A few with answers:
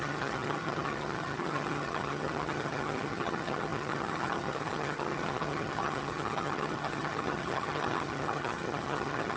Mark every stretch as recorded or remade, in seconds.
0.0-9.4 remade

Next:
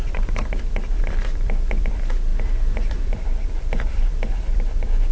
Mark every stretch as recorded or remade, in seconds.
0.0-2.3 remade; 2.3-2.9 recorded; 2.9-5.1 remade

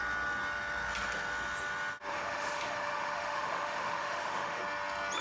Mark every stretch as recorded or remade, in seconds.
0.0-2.1 recorded; 2.1-4.6 remade; 4.6-5.2 recorded